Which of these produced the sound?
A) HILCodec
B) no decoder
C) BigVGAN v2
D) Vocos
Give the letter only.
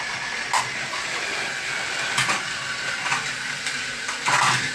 B